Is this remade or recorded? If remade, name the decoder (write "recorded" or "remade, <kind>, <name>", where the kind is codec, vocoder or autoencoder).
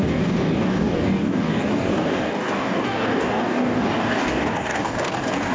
remade, codec, DAC